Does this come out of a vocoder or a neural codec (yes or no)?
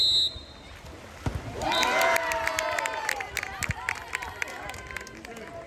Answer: no